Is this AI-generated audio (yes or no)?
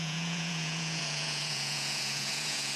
yes